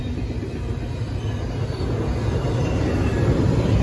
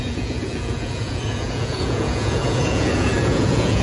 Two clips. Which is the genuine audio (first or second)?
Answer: first